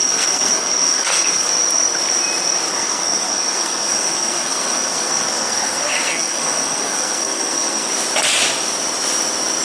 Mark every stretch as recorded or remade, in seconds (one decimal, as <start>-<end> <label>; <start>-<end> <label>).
0.0-1.5 remade; 1.5-2.7 recorded; 2.7-7.9 remade; 7.9-9.6 recorded